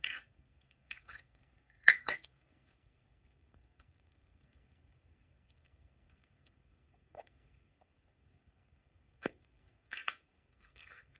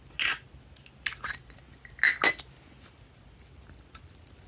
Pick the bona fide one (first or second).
second